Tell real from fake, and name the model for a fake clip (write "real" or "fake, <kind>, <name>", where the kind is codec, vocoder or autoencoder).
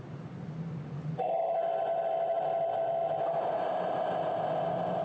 real